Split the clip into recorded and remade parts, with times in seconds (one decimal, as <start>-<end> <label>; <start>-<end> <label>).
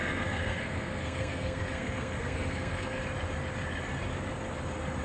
0.0-3.0 remade; 3.0-5.0 recorded